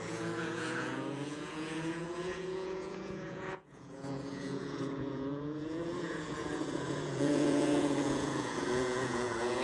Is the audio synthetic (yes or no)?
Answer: yes